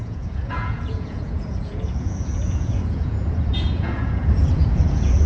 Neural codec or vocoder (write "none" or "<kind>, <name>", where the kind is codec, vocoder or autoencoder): vocoder, Vocos